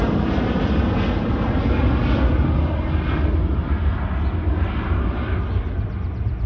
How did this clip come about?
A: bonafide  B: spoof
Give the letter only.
A